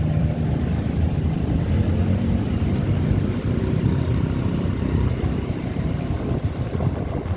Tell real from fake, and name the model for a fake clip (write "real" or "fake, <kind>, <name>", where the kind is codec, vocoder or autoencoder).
fake, vocoder, BigVGAN v2